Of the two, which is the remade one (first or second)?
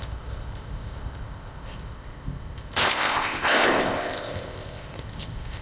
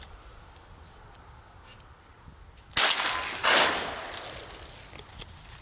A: first